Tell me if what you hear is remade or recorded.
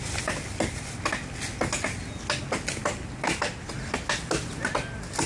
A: recorded